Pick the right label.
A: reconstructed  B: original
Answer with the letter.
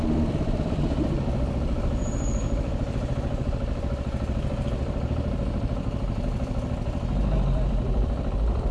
A